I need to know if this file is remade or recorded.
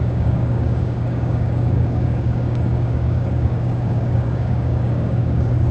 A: remade